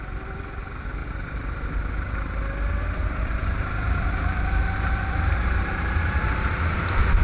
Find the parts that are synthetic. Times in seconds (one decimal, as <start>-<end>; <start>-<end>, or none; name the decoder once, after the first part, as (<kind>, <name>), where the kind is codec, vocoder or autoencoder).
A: 1.0-1.9 (vocoder, BigVGAN v2); 3.0-5.1